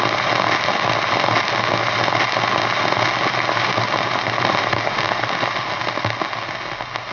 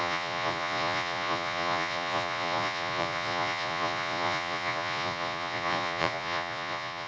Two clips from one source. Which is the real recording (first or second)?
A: first